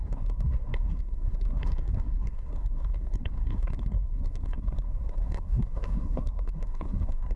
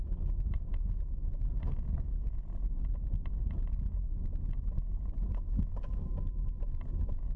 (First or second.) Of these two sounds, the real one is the second